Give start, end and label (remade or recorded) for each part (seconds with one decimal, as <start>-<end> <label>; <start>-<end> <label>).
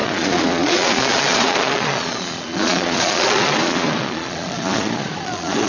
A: 0.0-5.7 remade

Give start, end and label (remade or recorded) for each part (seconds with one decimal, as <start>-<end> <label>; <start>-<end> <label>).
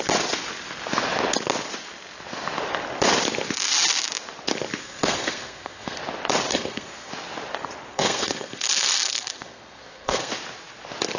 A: 0.0-4.8 recorded; 4.8-6.0 remade; 6.0-6.5 recorded; 6.5-7.1 remade; 7.1-7.9 recorded; 7.9-10.3 remade; 10.3-11.2 recorded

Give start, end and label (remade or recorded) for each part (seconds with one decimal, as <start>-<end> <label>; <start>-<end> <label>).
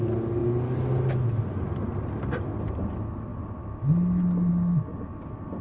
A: 0.0-4.9 recorded; 4.9-5.6 remade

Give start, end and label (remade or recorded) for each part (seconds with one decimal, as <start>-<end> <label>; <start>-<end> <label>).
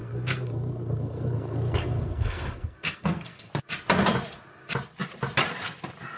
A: 0.0-3.5 remade; 3.5-6.2 recorded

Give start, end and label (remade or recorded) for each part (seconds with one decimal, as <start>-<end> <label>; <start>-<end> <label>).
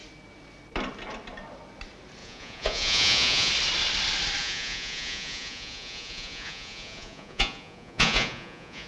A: 0.0-2.2 recorded; 2.2-3.5 remade; 3.5-4.4 recorded; 4.4-8.9 remade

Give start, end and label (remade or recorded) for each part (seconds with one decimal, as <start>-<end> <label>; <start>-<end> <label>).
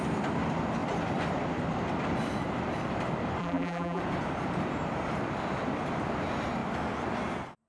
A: 0.0-3.4 recorded; 3.4-4.0 remade; 4.0-7.7 recorded